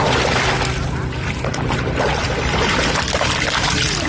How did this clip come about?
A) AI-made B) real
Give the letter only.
B